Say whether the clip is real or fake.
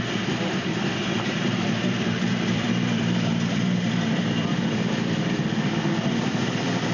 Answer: fake